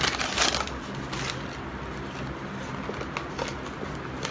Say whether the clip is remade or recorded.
recorded